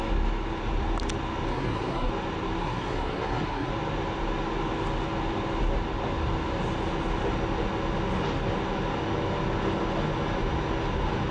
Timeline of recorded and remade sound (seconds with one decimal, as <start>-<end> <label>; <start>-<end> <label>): 0.0-1.5 recorded; 1.5-2.1 remade; 2.1-2.6 recorded; 2.6-3.7 remade; 3.7-11.3 recorded

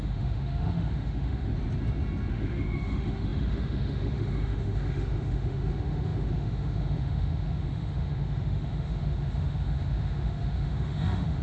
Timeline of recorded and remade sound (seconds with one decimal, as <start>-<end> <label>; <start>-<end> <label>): 0.0-1.5 remade; 1.5-2.3 recorded; 2.3-11.4 remade

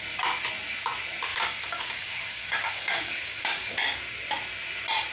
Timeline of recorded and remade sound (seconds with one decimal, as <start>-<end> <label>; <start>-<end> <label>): 0.0-1.3 recorded; 1.3-4.0 remade; 4.0-5.1 recorded